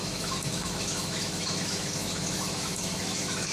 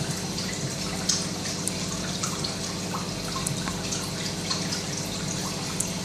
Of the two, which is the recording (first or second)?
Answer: second